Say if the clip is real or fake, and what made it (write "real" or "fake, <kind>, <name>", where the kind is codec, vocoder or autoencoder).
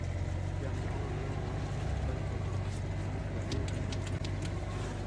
real